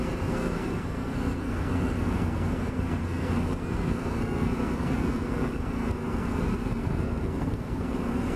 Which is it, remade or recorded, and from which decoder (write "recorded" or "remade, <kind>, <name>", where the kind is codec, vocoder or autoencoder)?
remade, codec, SNAC